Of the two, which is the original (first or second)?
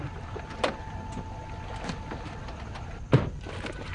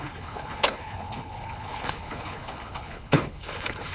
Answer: first